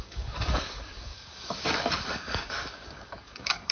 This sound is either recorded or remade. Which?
remade